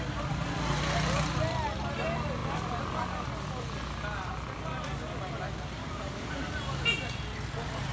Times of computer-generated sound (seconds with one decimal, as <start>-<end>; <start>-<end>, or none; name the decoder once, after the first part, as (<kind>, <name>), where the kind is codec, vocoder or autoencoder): 5.8-6.5 (codec, DAC)